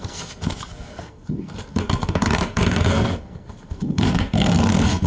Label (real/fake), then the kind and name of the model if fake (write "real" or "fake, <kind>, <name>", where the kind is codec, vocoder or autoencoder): fake, codec, SNAC